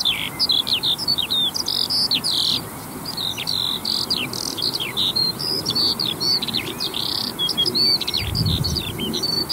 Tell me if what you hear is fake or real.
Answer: real